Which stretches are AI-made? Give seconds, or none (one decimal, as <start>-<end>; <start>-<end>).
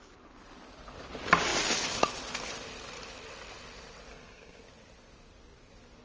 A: 4.1-4.6